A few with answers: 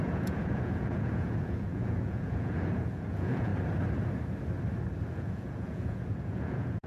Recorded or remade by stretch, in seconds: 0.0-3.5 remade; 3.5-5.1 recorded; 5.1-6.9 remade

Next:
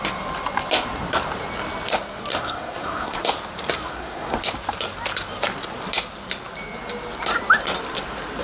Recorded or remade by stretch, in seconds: 0.0-2.3 recorded; 2.3-3.2 remade; 3.2-3.9 recorded; 3.9-4.4 remade; 4.4-8.4 recorded

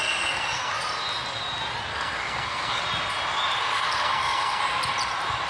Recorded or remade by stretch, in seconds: 0.0-0.7 remade; 0.7-1.9 recorded; 1.9-2.8 remade; 2.8-3.6 recorded; 3.6-4.6 remade; 4.6-5.5 recorded